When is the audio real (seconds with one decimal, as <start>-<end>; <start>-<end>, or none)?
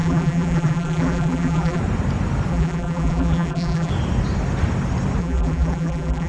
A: 1.8-2.5; 3.9-5.2